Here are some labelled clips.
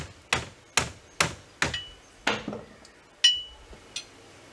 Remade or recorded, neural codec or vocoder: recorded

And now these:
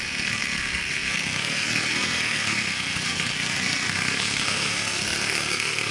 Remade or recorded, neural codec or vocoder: remade, codec, SNAC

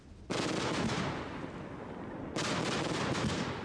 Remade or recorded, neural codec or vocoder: recorded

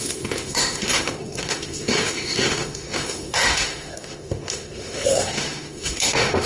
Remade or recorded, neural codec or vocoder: remade, autoencoder, DAC-VAE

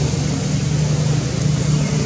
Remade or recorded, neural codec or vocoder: recorded